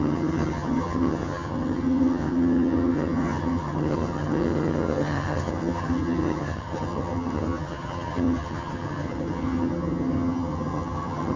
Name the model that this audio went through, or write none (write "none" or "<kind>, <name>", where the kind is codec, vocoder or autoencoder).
vocoder, HiFi-GAN